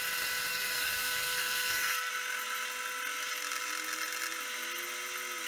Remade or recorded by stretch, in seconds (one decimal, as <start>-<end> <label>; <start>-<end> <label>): 0.0-0.5 recorded; 0.5-2.1 remade; 2.1-5.5 recorded